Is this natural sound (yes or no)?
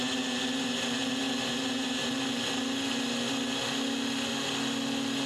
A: yes